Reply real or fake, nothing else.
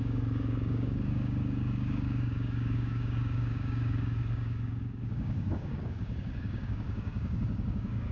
fake